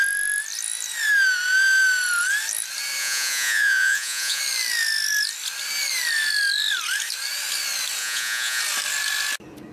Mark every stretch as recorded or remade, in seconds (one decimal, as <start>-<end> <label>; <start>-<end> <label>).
0.0-3.0 recorded; 3.0-4.4 remade; 4.4-8.0 recorded; 8.0-8.6 remade; 8.6-9.7 recorded